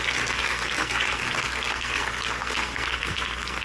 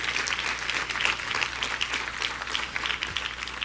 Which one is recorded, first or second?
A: second